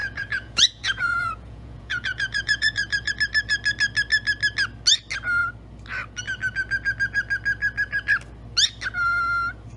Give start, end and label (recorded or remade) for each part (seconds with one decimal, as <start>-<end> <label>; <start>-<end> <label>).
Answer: 0.0-3.1 remade; 3.1-9.8 recorded